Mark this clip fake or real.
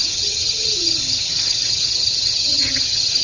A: fake